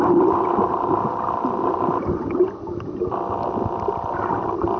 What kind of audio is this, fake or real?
real